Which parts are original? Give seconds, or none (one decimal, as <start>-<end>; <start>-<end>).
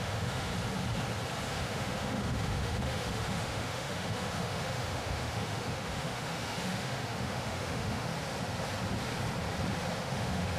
0.5-1.5; 8.1-10.0